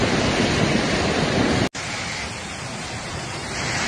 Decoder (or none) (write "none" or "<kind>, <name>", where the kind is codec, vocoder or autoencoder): none